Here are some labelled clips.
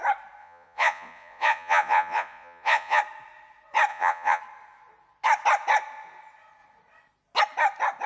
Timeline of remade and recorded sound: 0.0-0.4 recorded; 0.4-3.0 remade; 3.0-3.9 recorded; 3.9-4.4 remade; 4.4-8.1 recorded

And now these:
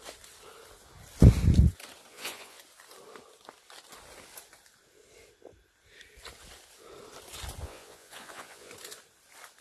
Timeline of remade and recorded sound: 0.0-2.1 recorded; 2.1-2.6 remade; 2.6-7.6 recorded; 7.6-8.7 remade; 8.7-9.6 recorded